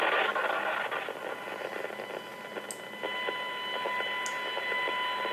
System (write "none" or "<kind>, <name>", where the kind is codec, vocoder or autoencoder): none